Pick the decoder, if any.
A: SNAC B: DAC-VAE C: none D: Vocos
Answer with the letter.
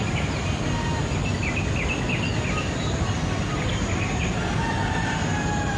C